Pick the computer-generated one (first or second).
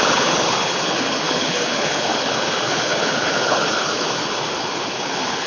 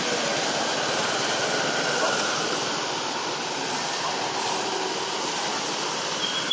first